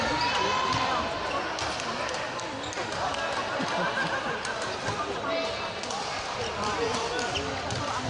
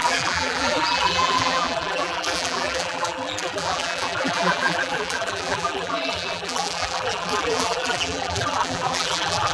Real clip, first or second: first